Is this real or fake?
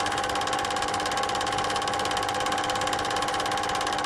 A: real